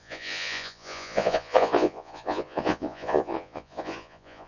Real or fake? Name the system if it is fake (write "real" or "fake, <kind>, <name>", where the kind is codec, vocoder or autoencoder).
fake, vocoder, Vocos